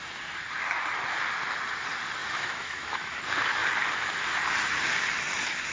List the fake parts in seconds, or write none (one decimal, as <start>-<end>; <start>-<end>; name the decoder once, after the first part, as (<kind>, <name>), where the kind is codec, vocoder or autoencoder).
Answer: 2.2-3.2 (autoencoder, DAC-VAE)